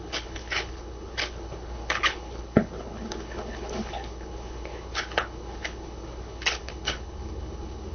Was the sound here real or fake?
fake